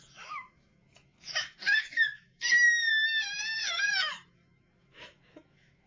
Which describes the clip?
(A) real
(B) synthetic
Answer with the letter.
B